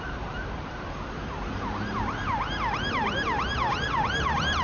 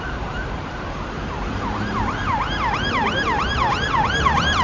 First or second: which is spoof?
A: second